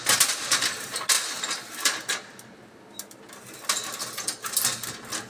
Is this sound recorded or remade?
recorded